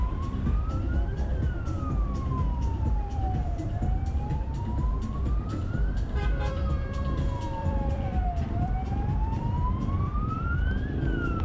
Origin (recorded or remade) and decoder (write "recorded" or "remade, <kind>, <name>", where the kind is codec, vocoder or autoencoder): remade, vocoder, BigVGAN v2